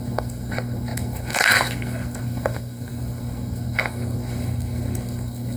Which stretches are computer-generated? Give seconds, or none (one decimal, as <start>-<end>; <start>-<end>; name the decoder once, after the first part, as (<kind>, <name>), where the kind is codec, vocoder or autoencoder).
0.0-5.6 (codec, SNAC)